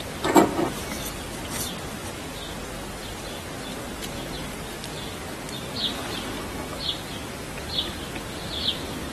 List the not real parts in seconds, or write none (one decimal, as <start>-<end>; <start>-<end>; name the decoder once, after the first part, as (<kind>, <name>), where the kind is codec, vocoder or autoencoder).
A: none